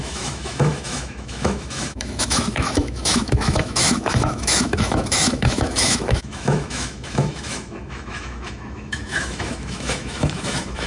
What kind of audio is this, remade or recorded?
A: remade